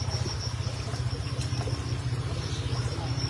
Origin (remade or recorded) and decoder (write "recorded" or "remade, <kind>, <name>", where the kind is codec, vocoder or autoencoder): recorded